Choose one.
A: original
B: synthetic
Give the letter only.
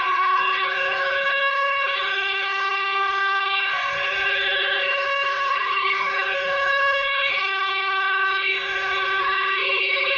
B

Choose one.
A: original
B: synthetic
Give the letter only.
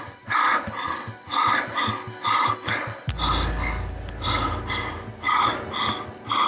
A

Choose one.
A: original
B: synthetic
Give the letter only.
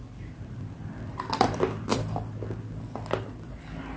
A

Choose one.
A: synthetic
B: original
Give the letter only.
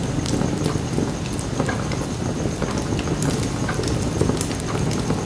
B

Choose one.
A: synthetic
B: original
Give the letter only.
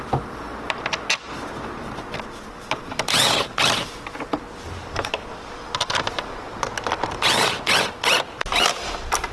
B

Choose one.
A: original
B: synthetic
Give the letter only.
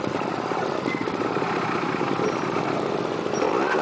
A